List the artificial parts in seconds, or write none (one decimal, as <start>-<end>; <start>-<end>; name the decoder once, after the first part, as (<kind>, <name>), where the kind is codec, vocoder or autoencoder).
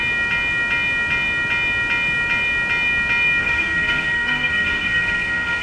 3.4-5.6 (codec, SNAC)